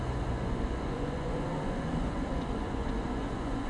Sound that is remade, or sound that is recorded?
remade